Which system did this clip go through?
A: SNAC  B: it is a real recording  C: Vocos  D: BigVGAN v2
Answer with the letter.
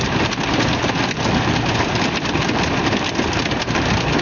D